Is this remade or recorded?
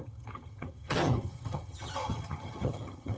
remade